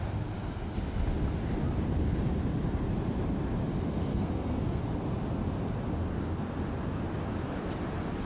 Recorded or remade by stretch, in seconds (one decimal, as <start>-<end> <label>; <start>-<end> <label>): 0.0-4.1 recorded; 4.1-4.8 remade; 4.8-8.3 recorded